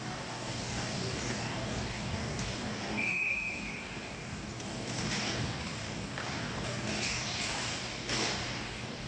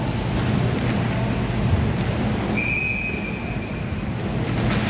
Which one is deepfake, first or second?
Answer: first